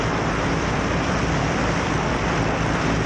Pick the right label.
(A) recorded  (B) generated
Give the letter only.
B